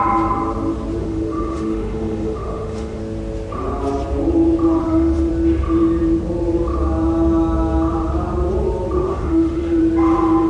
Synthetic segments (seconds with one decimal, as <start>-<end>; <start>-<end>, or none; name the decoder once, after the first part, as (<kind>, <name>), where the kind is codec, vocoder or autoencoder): 1.0-3.0 (autoencoder, DAC-VAE); 4.8-5.3; 9.1-9.8